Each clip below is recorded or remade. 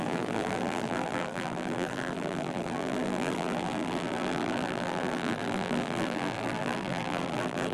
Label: remade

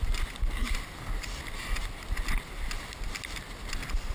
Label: recorded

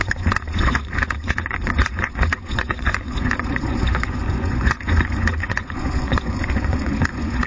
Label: remade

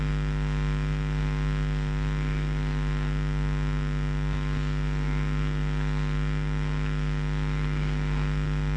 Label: recorded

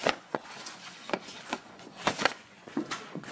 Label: remade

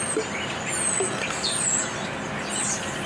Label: recorded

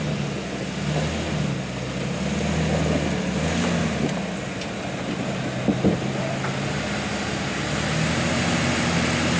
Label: recorded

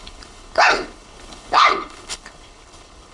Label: remade